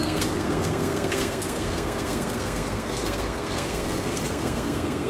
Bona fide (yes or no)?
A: no